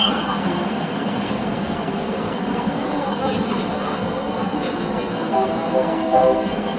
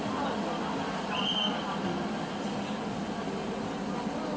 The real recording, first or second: second